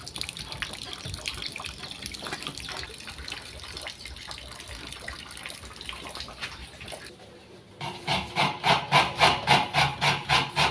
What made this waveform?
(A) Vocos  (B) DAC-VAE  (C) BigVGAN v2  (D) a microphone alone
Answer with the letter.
D